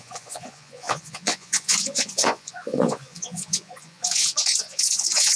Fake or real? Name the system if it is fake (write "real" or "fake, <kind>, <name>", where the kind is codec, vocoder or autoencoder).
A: fake, vocoder, Vocos